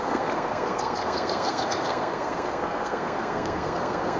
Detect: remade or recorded remade